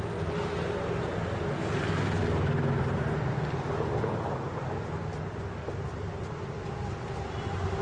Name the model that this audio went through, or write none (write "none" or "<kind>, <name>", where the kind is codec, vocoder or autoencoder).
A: none